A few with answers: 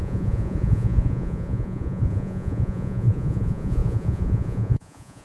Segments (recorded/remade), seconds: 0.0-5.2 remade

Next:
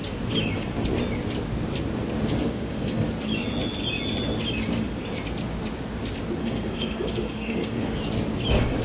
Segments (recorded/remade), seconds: 0.0-2.4 recorded; 2.4-3.1 remade; 3.1-6.4 recorded; 6.4-8.0 remade; 8.0-8.8 recorded

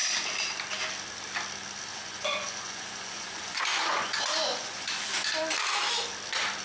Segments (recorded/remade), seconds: 0.0-1.9 recorded; 1.9-5.1 remade; 5.1-6.6 recorded

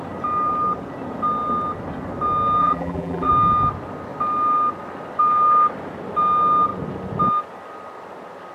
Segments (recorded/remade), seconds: 0.0-2.6 recorded; 2.6-3.3 remade; 3.3-8.5 recorded